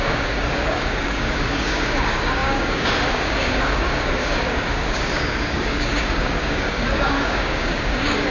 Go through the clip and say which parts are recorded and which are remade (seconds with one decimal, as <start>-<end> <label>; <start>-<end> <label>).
0.0-8.3 remade